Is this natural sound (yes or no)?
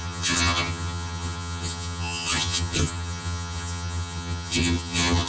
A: no